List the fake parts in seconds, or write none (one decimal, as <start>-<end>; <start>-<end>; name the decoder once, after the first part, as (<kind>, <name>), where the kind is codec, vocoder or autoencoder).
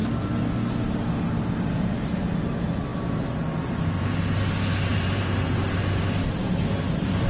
4.9-6.6 (vocoder, BigVGAN v2)